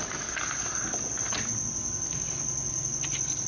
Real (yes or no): yes